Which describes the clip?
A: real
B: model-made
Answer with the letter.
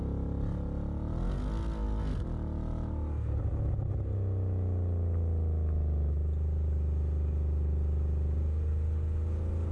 A